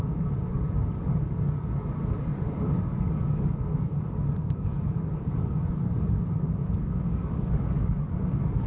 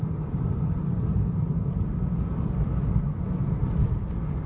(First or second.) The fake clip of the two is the first